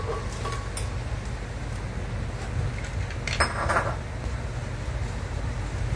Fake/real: real